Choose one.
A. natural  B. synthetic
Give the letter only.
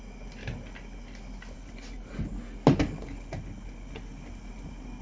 A